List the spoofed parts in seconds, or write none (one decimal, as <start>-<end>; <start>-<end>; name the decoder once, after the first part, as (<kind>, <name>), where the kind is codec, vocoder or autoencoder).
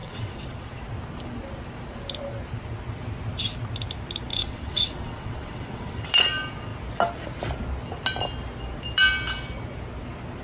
0.0-0.8 (vocoder, WaveNeXt); 4.3-6.1